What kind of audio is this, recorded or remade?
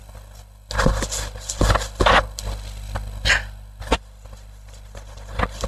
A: recorded